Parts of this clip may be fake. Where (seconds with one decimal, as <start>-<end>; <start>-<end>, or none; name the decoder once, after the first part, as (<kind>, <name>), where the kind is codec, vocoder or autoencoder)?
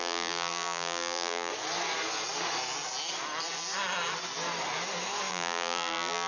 0.0-1.5 (vocoder, BigVGAN v2); 5.3-6.3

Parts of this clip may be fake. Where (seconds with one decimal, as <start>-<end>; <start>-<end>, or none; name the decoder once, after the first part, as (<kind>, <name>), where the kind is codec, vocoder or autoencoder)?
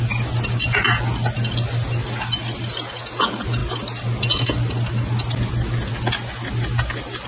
none